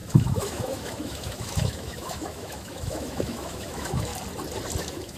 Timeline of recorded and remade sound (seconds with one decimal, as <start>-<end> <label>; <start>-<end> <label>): 0.0-4.1 remade; 4.1-4.8 recorded; 4.8-5.2 remade